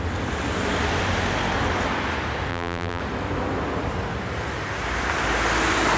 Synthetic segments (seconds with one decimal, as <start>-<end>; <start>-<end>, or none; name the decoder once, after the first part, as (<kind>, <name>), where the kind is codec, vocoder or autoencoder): 2.5-3.0 (vocoder, BigVGAN v2)